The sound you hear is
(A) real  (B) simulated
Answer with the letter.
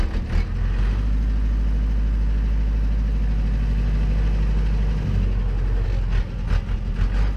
A